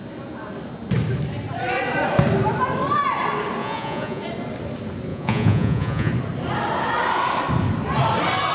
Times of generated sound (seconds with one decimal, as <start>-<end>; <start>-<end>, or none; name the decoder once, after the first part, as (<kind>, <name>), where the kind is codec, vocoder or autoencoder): 3.6-4.2 (vocoder, Vocos); 5.1-6.1